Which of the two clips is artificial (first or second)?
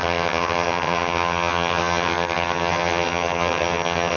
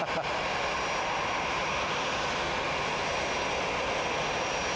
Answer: first